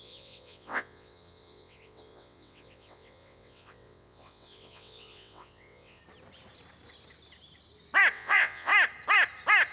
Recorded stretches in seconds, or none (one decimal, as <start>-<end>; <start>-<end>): 6.0-8.1; 8.7-9.7